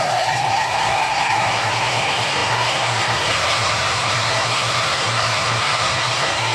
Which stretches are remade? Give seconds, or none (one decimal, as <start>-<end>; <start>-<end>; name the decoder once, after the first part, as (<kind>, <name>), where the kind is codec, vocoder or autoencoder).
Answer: 0.0-6.5 (codec, SNAC)